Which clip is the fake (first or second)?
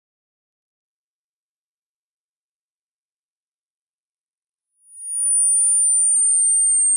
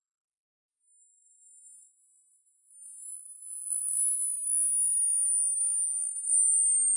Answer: second